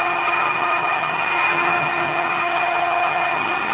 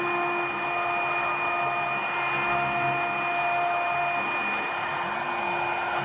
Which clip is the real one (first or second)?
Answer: second